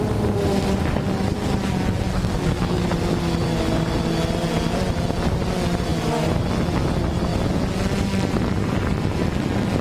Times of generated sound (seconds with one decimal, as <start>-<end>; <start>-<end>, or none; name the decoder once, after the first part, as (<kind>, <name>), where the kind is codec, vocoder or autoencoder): 2.1-2.8 (codec, SNAC)

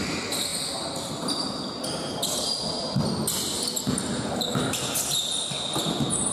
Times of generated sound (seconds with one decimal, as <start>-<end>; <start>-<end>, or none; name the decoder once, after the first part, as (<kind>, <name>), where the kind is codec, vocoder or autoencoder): none

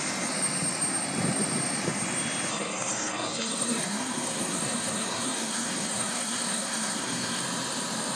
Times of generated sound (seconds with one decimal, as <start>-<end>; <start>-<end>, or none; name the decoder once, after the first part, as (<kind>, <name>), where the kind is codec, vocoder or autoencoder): 2.5-7.4 (codec, SNAC)

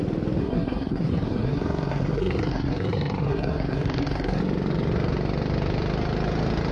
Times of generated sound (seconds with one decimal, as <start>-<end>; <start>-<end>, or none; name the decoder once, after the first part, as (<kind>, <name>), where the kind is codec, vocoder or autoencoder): 0.4-4.4 (codec, SNAC)

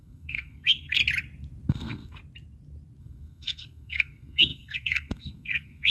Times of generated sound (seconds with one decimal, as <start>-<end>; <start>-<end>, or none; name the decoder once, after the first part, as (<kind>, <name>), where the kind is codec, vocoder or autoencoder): 0.0-1.0 (codec, SNAC); 1.7-2.2; 3.0-5.9

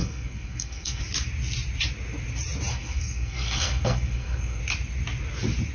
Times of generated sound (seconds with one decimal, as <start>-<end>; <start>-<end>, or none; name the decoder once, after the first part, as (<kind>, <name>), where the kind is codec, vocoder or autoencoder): 0.0-1.0 (codec, SNAC); 2.7-4.6